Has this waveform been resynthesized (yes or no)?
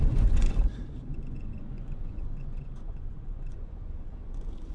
yes